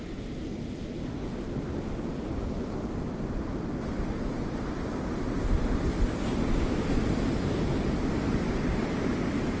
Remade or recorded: recorded